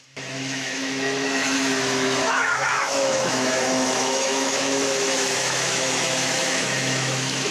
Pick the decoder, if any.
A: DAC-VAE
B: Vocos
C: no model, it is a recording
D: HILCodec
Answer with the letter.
A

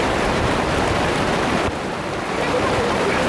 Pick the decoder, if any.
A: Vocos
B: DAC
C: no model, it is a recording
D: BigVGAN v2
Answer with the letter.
D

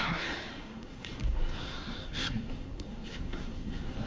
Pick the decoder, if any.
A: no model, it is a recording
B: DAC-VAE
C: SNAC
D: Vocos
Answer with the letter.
C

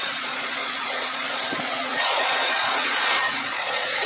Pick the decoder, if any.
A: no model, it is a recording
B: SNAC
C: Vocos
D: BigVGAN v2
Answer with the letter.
C